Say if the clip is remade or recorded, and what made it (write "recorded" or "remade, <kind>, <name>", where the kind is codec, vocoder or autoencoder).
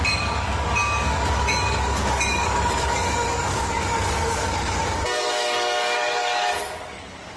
remade, codec, DAC